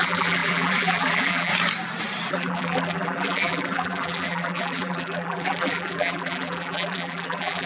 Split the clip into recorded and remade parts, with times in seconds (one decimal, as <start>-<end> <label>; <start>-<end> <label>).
0.0-1.5 remade; 1.5-2.3 recorded; 2.3-7.7 remade